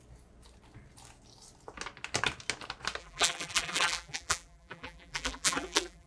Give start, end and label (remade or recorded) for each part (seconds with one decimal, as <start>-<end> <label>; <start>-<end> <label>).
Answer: 0.0-3.0 recorded; 3.0-6.1 remade